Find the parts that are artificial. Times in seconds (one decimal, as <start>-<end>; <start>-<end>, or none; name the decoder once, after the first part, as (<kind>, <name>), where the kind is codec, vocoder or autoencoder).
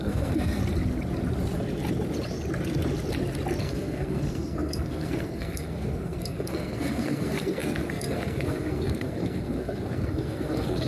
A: 0.0-0.6 (codec, SNAC); 3.6-10.9